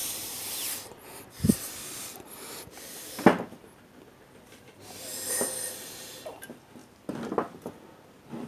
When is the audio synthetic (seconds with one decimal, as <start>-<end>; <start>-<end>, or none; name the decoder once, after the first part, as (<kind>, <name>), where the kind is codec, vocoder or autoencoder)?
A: 0.0-5.0 (vocoder, BigVGAN v2)